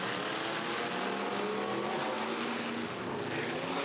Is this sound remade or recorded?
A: recorded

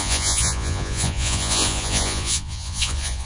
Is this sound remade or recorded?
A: remade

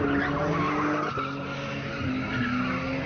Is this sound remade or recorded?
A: recorded